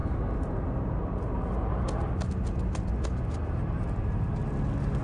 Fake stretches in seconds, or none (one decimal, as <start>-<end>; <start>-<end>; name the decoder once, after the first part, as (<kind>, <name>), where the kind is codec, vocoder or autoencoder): none